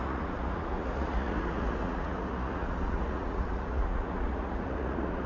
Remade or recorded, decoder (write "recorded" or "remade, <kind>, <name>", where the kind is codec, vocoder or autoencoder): remade, vocoder, Vocos